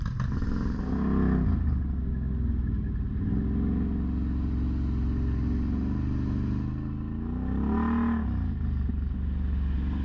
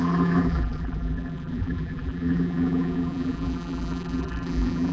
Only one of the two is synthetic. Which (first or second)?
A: second